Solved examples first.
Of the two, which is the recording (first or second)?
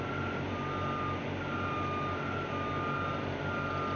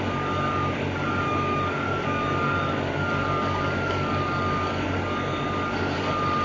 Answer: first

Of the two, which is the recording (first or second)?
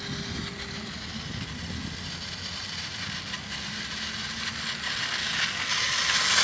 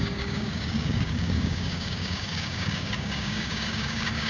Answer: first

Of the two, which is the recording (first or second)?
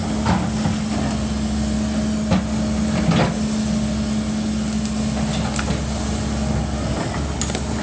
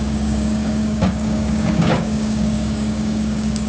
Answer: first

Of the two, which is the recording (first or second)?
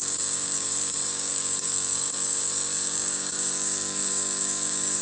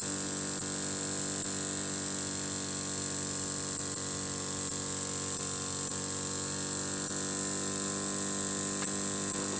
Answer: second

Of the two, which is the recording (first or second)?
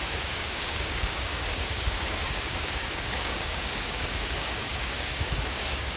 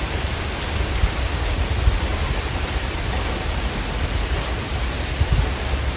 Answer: second